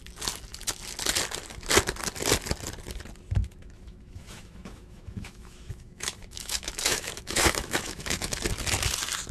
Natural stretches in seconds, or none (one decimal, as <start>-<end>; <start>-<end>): 0.0-3.4; 8.4-9.3